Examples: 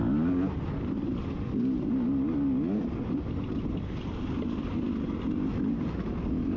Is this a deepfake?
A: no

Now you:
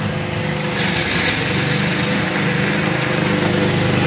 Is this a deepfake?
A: no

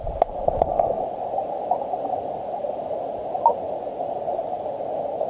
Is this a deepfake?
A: no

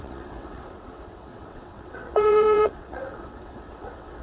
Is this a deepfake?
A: yes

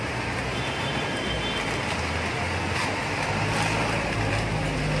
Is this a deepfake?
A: no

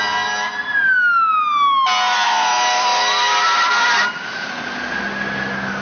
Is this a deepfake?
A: no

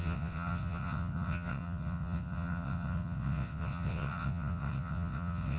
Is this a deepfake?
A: yes